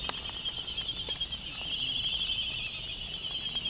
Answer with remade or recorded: recorded